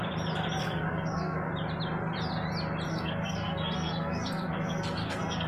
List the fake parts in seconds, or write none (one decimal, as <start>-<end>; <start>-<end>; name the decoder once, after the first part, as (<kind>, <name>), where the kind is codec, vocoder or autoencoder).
0.6-1.5 (codec, SNAC); 2.9-5.5